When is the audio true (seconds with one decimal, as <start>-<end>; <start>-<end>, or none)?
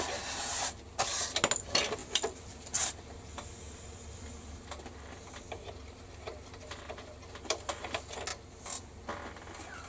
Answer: 0.0-9.9